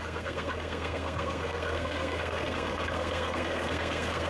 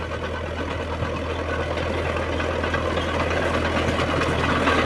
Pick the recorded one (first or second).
second